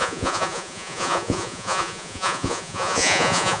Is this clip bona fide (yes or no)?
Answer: no